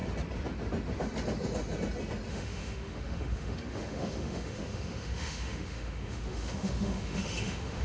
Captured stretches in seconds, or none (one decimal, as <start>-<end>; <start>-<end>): 0.0-2.3